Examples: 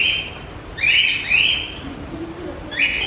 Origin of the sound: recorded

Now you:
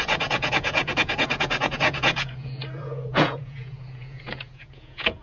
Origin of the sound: remade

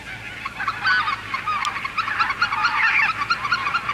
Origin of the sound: recorded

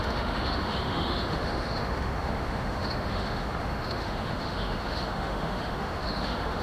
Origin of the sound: remade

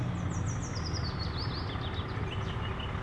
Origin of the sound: recorded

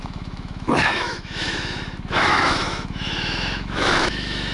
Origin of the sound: remade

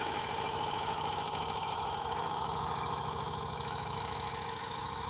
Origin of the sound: remade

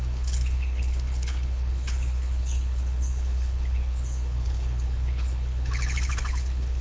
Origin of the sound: remade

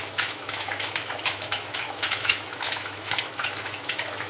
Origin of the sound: remade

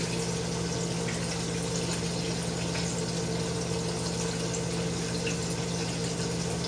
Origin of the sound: recorded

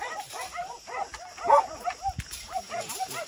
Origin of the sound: remade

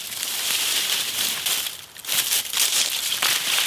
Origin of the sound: recorded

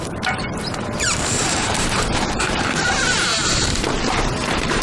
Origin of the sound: remade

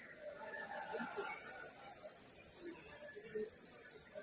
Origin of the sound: recorded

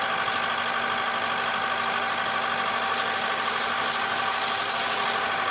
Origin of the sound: recorded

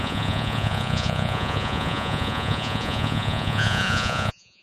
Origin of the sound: remade